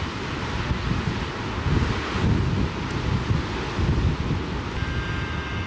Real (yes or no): yes